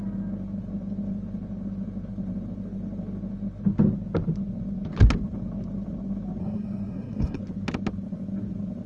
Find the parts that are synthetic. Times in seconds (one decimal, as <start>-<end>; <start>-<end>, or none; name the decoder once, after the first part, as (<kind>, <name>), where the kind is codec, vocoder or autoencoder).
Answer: 6.4-7.4 (codec, SNAC)